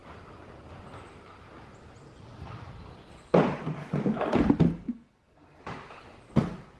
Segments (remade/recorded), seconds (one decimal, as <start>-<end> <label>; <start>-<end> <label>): 0.0-4.7 recorded; 4.7-5.6 remade; 5.6-6.8 recorded